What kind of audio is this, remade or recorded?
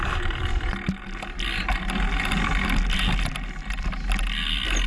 recorded